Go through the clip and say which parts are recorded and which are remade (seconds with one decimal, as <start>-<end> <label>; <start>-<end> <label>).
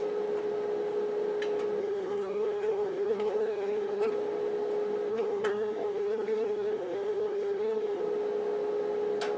0.0-1.8 recorded; 1.8-4.1 remade; 4.1-5.1 recorded; 5.1-8.0 remade; 8.0-9.4 recorded